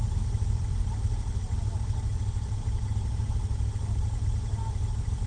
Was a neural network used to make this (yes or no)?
no